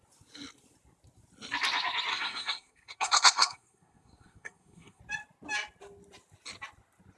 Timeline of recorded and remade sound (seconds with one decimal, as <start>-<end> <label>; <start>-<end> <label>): 0.0-2.1 recorded; 2.1-5.0 remade; 5.0-7.2 recorded